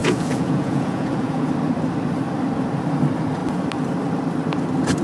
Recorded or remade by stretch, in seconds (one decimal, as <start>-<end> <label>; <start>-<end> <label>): 0.0-1.5 remade; 1.5-5.0 recorded